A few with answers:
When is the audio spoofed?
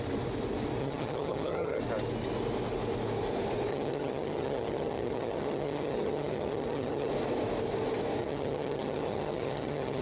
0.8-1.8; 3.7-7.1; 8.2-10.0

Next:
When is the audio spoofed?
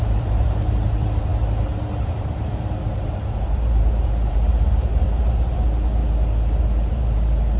0.0-1.3; 2.0-6.0; 6.9-7.6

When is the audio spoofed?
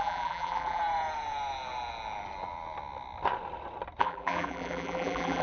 0.0-0.8; 4.0-5.4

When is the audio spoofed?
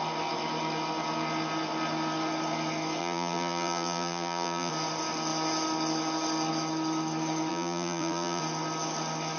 3.0-4.7; 7.5-8.4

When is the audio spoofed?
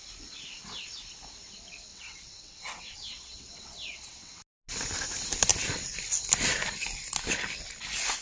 1.9-4.3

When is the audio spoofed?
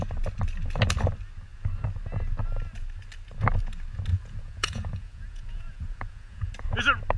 4.1-6.5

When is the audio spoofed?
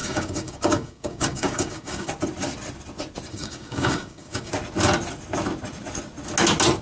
0.0-2.1; 3.3-4.5